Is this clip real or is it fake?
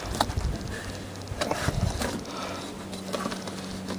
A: real